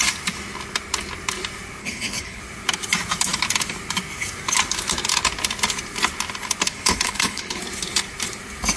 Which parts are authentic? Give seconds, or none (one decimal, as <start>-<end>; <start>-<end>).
0.0-1.8; 2.4-6.7; 7.6-8.8